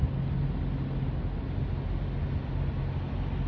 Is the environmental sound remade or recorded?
recorded